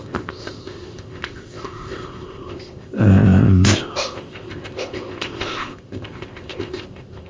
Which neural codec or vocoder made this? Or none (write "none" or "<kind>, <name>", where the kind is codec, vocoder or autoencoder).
codec, ZipCodec